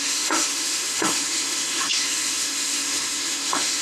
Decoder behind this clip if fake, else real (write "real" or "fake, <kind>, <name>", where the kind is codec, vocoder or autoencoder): fake, autoencoder, DAC-VAE